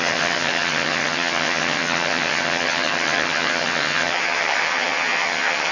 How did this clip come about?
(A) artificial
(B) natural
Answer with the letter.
A